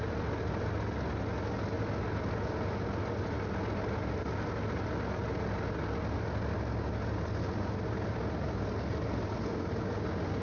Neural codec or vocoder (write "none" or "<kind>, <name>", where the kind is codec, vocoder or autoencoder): none